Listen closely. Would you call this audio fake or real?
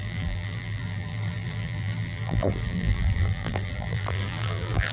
fake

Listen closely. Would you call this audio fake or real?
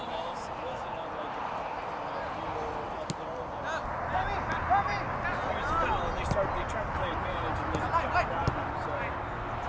real